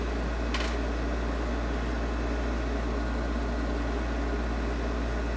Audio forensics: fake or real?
real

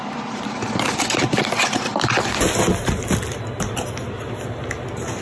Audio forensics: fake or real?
real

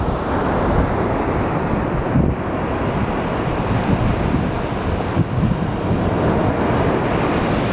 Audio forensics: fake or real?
real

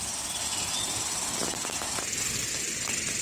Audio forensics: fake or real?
real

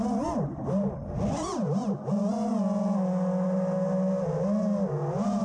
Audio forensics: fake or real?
real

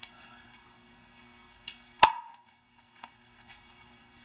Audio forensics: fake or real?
fake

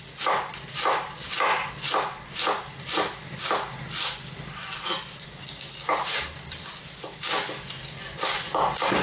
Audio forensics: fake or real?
real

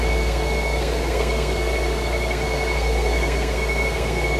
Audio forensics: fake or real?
fake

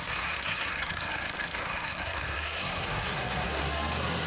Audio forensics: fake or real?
fake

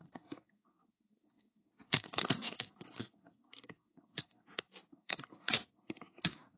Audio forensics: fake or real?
fake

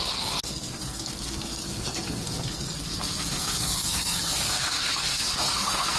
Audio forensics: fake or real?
fake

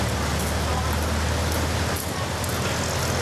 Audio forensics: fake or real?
real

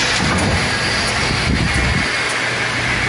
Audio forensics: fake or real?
real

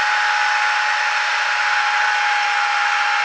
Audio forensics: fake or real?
real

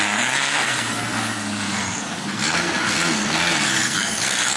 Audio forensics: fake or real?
fake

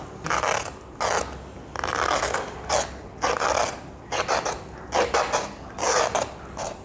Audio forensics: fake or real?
real